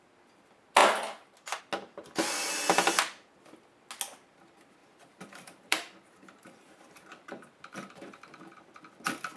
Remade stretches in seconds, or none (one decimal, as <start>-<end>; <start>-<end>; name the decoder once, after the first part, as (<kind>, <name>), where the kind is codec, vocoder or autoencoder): 4.8-8.7 (vocoder, BigVGAN v2)